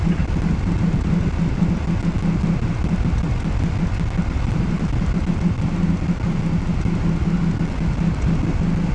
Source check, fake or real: real